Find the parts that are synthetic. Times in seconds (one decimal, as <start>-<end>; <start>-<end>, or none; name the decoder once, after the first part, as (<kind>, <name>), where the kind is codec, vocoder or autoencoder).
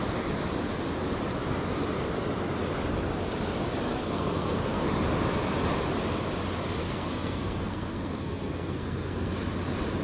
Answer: 3.9-4.9 (codec, SNAC); 6.8-9.3